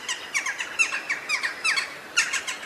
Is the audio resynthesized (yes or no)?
no